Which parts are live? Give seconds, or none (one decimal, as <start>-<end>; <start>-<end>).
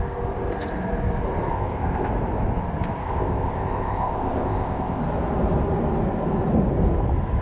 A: 0.0-1.5; 2.1-3.0; 5.0-7.4